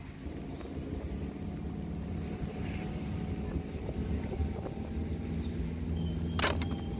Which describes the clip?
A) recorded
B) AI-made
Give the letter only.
A